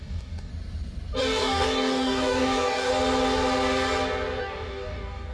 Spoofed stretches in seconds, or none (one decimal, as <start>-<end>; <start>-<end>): 0.0-0.5; 1.2-2.9; 4.4-5.3